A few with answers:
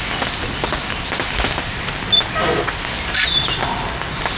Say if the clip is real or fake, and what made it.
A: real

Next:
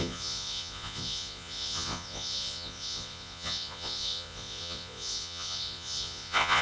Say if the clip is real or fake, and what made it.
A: fake, vocoder, Vocos